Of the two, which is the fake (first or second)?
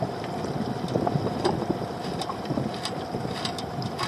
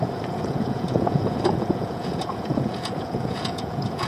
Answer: second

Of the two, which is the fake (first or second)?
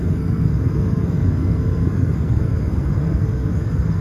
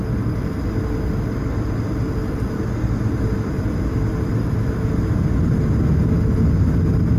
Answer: first